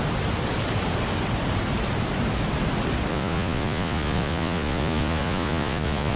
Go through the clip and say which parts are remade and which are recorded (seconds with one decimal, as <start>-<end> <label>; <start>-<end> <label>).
0.0-3.1 recorded; 3.1-6.2 remade